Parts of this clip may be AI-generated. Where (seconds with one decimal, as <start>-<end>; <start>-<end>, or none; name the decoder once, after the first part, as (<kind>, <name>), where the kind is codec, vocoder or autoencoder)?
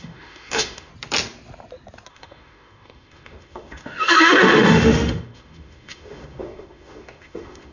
0.0-0.9 (autoencoder, DAC-VAE); 2.1-7.7